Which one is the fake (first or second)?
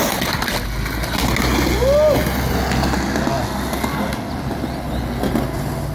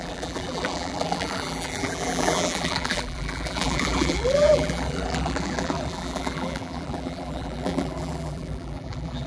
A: second